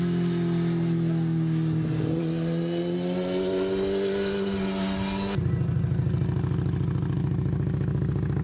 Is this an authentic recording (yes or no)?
yes